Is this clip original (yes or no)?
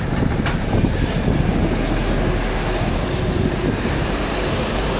yes